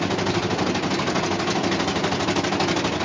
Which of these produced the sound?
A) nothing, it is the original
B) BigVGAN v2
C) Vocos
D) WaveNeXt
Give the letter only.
A